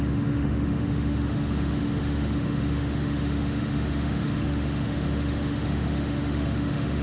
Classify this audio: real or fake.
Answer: fake